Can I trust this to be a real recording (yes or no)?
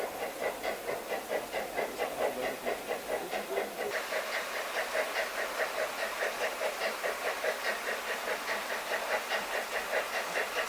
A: yes